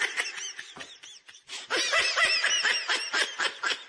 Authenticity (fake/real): real